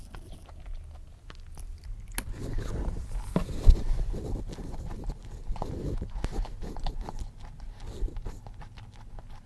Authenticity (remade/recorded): recorded